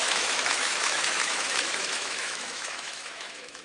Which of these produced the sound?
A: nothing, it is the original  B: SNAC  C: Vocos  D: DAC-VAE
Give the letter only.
D